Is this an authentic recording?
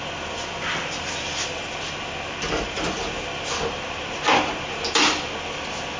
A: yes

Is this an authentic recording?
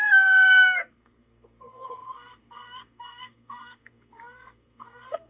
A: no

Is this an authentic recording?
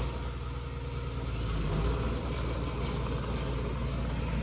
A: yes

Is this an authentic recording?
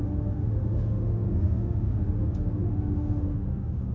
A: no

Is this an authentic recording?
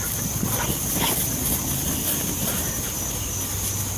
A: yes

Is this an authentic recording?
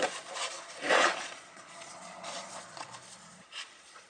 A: no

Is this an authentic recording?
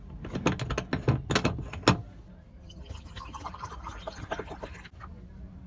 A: yes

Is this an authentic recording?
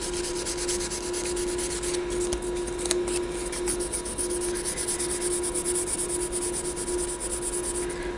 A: yes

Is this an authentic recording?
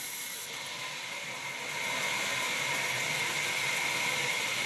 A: yes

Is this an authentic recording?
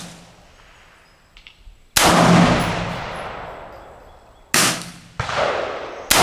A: yes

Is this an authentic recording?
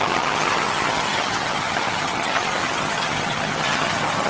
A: no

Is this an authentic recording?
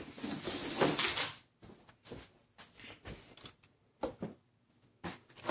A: yes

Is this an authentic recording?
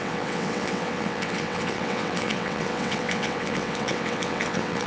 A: no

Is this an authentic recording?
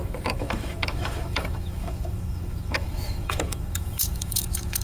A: no